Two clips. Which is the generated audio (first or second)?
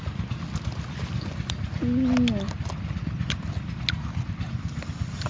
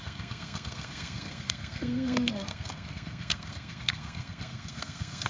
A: second